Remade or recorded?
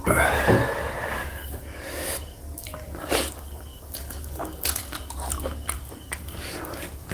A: remade